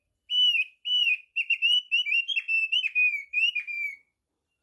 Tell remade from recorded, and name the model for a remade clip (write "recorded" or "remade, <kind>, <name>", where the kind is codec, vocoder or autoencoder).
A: remade, vocoder, BigVGAN v2